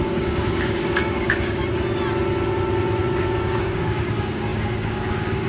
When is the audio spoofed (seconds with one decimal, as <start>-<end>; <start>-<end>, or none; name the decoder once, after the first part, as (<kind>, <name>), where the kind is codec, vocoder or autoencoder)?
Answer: 0.0-1.6 (codec, DAC); 3.2-5.5